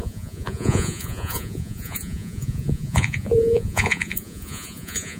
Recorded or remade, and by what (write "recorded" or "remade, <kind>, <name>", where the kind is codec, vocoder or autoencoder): remade, vocoder, Vocos